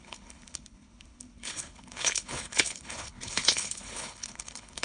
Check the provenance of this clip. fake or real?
fake